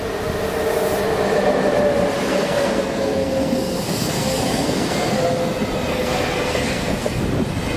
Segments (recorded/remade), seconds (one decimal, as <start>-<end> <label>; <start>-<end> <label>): 0.0-2.3 recorded; 2.3-5.2 remade; 5.2-5.9 recorded; 5.9-7.2 remade; 7.2-7.8 recorded